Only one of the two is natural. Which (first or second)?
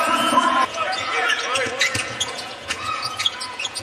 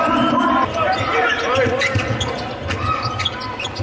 second